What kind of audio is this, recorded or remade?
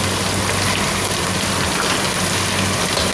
recorded